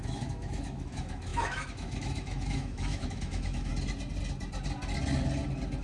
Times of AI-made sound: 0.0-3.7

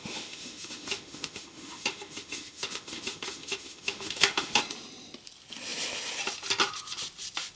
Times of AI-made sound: 0.0-4.6